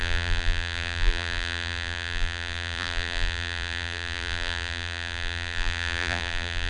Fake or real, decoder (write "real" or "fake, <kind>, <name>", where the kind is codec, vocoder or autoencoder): fake, vocoder, BigVGAN v2